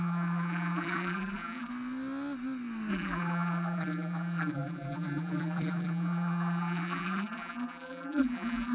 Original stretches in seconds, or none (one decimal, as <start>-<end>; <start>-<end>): 1.7-2.9